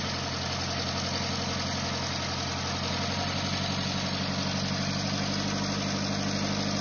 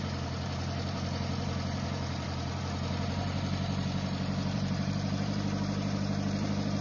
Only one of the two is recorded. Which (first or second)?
first